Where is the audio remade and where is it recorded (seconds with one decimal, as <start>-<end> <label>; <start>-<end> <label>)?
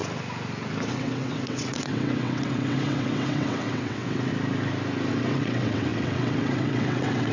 0.0-0.9 recorded; 0.9-4.3 remade; 4.3-5.1 recorded; 5.1-7.3 remade